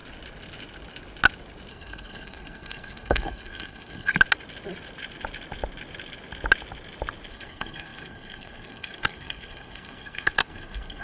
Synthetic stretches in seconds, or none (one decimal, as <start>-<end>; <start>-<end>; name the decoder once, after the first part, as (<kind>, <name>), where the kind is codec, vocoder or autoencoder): 1.7-4.1 (codec, SNAC); 7.3-11.0